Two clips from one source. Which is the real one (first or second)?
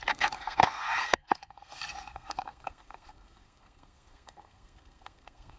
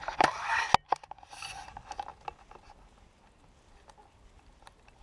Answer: second